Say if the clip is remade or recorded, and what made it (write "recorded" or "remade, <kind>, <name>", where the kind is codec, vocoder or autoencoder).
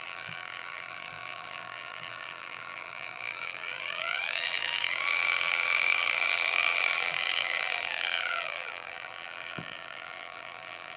remade, vocoder, BigVGAN v2